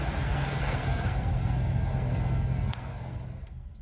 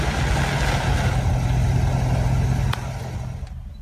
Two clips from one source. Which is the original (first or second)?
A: second